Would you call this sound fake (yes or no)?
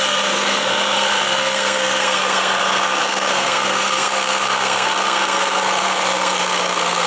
yes